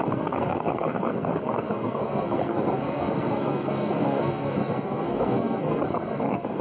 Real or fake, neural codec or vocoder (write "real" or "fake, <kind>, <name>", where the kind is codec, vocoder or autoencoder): fake, codec, SNAC